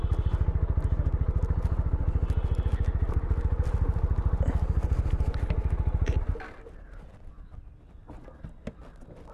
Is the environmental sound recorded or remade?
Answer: recorded